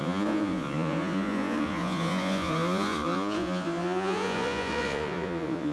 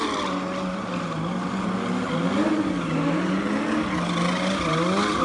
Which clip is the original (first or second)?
second